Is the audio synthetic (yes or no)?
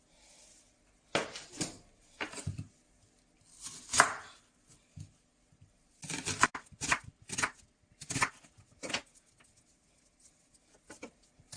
no